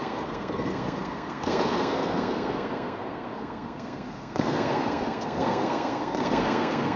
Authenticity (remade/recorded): remade